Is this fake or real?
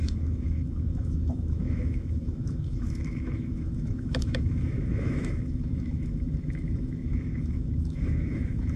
fake